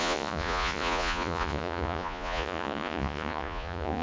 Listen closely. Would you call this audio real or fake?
fake